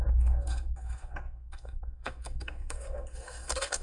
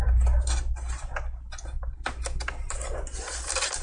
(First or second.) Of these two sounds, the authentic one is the second